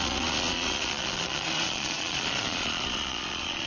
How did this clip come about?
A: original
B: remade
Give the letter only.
B